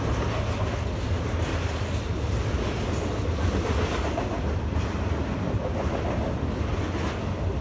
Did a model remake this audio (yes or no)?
no